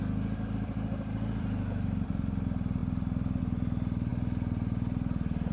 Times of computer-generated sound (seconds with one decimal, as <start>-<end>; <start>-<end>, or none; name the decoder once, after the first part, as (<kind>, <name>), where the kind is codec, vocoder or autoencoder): none